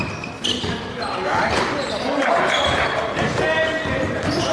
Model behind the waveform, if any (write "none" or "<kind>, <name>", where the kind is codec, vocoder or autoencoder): none